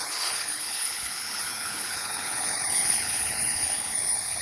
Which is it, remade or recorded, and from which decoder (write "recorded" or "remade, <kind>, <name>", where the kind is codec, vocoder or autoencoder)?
remade, codec, HILCodec